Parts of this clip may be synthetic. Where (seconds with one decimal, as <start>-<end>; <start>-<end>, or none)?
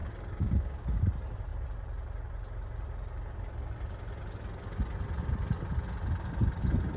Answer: 0.0-1.1